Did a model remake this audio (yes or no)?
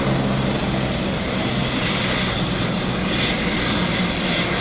no